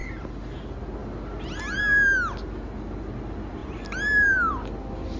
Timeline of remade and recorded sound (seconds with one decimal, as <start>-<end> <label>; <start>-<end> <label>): 0.0-0.6 remade; 0.6-5.2 recorded